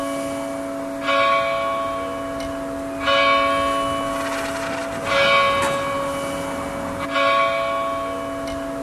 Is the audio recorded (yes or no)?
yes